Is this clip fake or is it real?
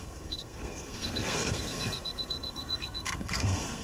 fake